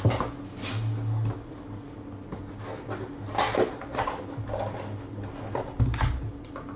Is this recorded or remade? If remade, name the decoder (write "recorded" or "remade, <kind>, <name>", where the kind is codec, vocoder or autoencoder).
recorded